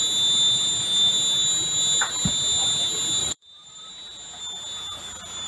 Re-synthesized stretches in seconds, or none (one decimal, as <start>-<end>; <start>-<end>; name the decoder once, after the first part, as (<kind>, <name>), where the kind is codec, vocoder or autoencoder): 3.2-3.9 (vocoder, BigVGAN v2)